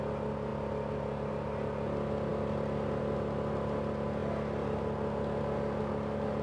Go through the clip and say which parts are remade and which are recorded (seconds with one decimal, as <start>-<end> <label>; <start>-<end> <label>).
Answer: 0.0-6.4 recorded